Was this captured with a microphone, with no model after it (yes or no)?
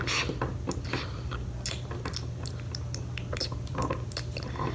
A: yes